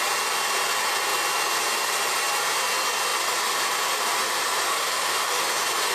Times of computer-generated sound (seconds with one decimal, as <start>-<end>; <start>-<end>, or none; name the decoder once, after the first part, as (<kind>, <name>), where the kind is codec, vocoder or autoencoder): 4.7-5.4 (autoencoder, DAC-VAE)